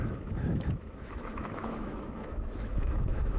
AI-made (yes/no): yes